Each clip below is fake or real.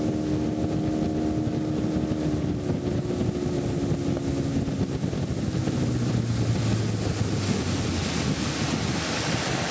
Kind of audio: real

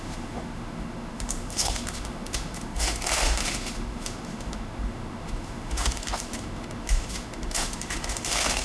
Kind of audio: fake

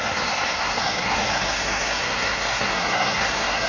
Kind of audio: fake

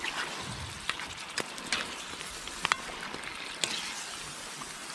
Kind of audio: real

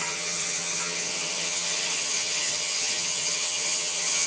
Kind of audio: fake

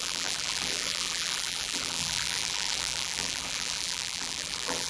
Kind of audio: fake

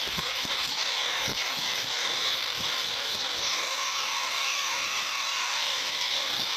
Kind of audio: fake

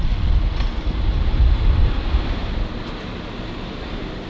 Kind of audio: real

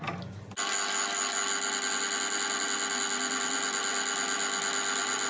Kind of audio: real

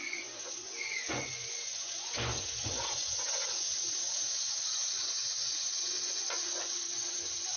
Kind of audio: fake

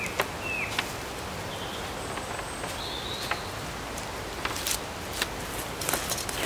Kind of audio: real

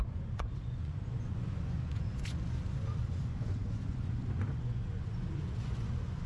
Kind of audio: fake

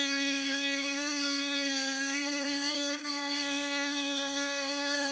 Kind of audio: fake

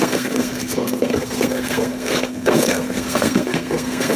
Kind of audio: fake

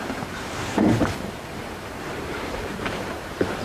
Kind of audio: fake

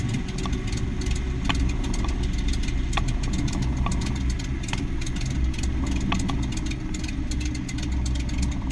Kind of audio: real